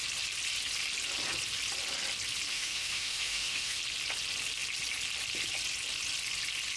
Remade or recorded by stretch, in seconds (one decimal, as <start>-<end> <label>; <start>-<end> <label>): 0.0-2.5 recorded; 2.5-3.8 remade; 3.8-6.8 recorded